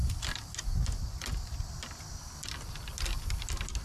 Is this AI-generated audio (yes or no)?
no